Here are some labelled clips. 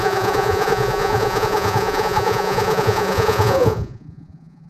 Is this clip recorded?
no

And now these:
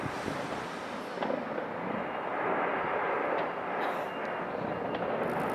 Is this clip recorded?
yes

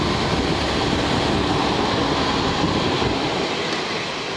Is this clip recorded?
yes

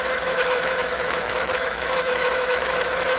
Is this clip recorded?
no